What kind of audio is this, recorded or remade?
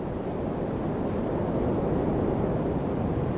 recorded